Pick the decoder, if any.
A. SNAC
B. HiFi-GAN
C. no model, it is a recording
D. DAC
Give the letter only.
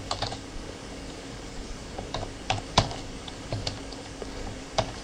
D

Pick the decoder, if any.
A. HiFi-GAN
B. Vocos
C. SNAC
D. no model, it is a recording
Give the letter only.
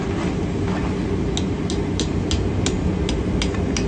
D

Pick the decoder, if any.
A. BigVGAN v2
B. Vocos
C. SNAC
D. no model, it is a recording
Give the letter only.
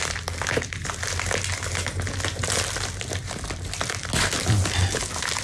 D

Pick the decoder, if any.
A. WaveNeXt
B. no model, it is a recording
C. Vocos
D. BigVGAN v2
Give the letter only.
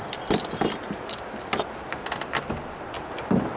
B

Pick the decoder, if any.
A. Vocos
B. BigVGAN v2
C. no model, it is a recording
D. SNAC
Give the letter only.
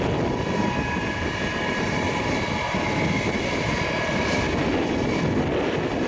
C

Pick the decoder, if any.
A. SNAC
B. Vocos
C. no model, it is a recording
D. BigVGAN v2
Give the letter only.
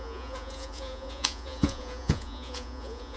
B